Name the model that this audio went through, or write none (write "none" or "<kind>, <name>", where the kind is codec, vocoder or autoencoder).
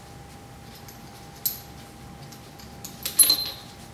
none